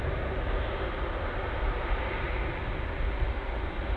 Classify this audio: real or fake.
real